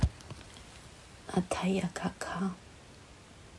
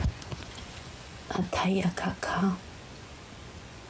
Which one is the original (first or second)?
first